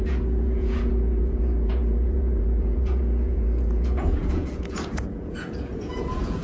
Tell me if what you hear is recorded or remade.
remade